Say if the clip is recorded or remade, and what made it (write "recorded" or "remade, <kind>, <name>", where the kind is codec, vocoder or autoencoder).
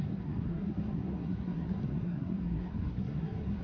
remade, codec, SNAC